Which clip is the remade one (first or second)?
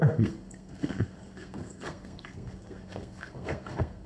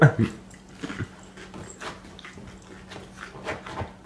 first